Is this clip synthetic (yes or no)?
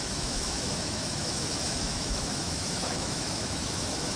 yes